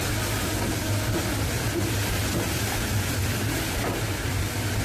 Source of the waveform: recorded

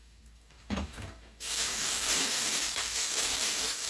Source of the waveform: remade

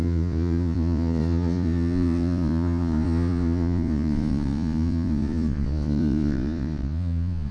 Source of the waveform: remade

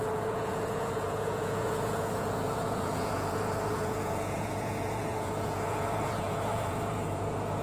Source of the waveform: remade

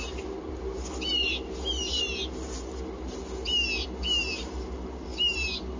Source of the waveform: recorded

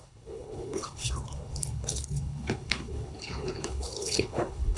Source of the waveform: remade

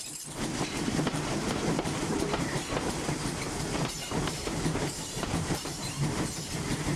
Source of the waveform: remade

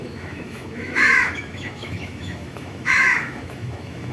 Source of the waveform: remade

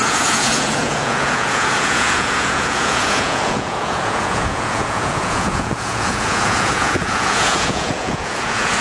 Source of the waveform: remade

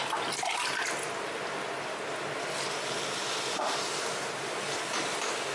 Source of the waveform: recorded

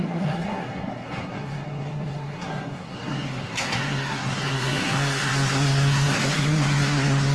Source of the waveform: remade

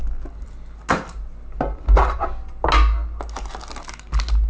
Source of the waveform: recorded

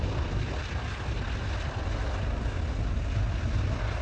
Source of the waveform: recorded